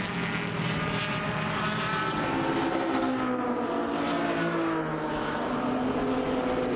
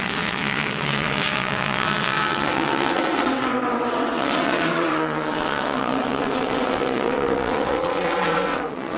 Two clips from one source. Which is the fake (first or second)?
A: second